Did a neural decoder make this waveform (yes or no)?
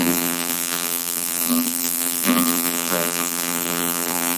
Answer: yes